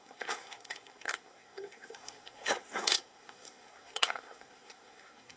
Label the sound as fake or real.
fake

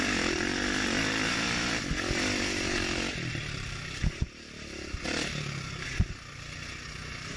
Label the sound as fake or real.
fake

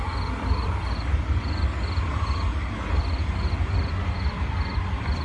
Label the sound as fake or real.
real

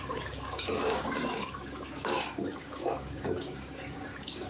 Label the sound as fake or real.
fake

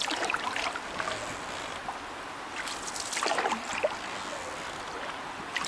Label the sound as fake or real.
real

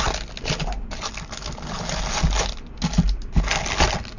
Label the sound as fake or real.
real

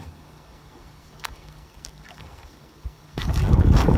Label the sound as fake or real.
fake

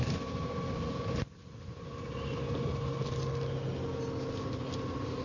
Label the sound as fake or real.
real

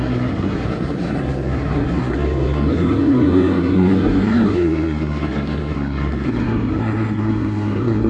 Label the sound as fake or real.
fake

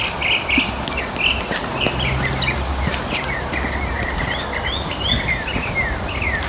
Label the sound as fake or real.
real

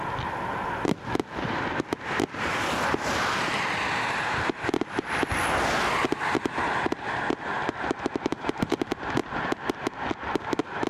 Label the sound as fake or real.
real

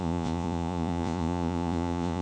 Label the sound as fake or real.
fake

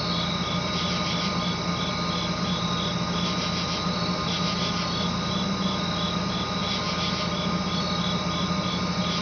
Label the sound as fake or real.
real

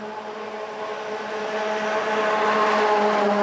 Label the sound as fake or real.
real